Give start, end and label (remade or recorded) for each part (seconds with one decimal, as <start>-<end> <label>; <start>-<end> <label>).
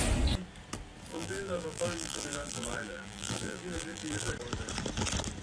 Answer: 0.0-1.1 recorded; 1.1-4.3 remade; 4.3-5.4 recorded